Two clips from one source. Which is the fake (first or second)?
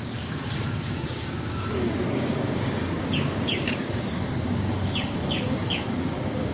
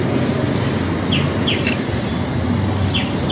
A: first